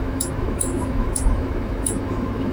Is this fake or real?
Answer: fake